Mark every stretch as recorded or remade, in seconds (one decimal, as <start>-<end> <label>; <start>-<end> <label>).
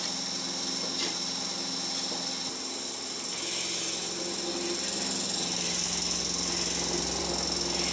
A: 0.0-7.9 recorded